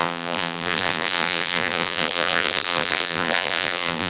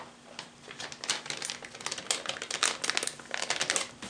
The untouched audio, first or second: second